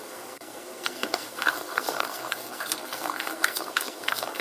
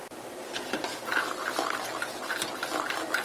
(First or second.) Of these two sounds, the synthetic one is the first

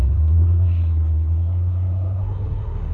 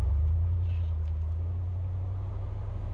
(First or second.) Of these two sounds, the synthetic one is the first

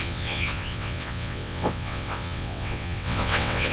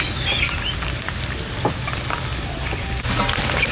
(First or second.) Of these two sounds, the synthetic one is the first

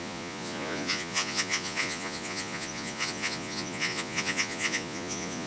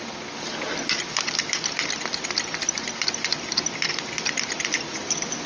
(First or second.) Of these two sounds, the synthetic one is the first